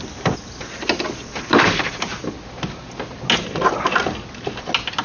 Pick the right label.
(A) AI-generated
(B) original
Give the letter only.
B